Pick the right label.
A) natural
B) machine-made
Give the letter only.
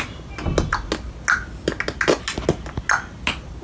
A